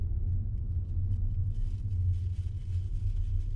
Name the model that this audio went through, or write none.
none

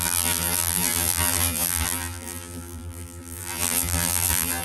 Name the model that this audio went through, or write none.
vocoder, BigVGAN v2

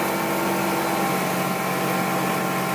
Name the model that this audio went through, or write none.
none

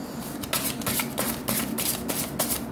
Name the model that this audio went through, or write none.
none